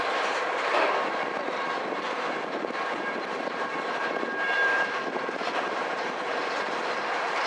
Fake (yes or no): yes